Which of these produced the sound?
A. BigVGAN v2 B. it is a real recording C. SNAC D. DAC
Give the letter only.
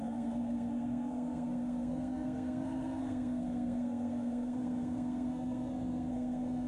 C